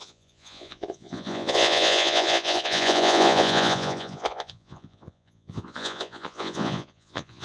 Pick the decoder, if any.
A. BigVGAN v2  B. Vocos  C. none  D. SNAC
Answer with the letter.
B